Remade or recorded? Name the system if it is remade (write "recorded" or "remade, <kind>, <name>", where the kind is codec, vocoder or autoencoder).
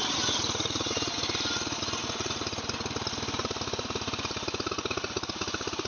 recorded